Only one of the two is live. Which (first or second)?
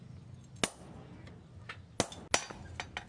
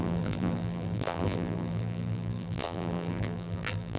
first